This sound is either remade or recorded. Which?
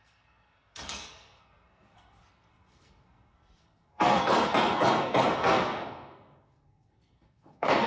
remade